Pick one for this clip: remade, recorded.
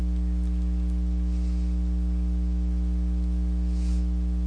recorded